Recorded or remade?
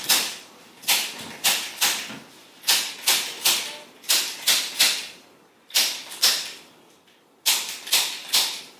remade